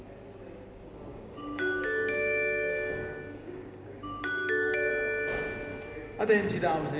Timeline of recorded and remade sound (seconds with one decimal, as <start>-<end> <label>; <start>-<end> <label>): 0.0-1.1 recorded; 1.1-4.9 remade; 4.9-5.7 recorded; 5.7-6.5 remade; 6.5-7.0 recorded